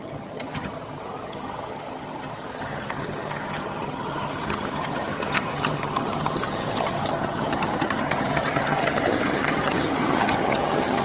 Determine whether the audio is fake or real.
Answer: fake